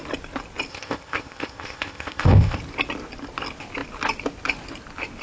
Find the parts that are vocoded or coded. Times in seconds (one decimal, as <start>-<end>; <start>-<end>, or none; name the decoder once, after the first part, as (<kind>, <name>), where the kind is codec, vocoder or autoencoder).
0.7-2.6 (codec, ZipCodec)

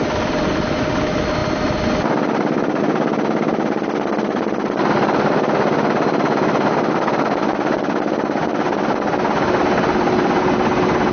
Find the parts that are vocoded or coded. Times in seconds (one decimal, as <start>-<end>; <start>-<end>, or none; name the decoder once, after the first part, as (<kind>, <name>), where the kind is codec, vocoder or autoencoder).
none

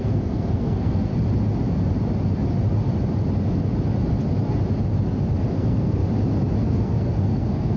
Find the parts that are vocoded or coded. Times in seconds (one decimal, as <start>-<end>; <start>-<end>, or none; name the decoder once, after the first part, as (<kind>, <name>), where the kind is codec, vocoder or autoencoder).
0.0-1.1 (codec, SNAC); 5.5-6.0; 6.6-7.8

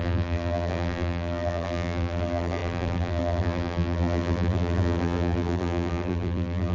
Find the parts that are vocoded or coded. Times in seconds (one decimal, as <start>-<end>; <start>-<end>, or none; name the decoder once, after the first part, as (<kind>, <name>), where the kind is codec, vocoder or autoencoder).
0.0-6.7 (vocoder, BigVGAN v2)